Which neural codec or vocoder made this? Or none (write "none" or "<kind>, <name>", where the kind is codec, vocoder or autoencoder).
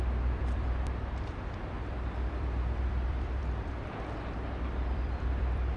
vocoder, BigVGAN v2